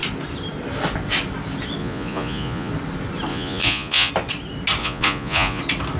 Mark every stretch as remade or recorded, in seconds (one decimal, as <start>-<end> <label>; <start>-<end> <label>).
0.0-1.8 recorded; 1.8-2.7 remade; 2.7-3.3 recorded; 3.3-4.1 remade; 4.1-4.8 recorded; 4.8-5.6 remade; 5.6-6.0 recorded